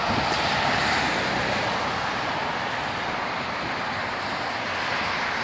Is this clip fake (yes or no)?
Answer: no